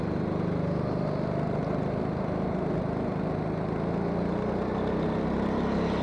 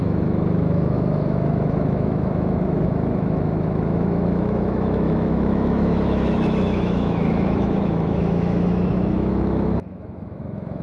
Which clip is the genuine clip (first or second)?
first